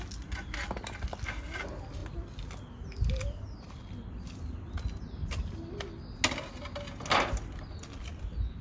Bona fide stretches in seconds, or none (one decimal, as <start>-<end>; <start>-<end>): 0.0-8.6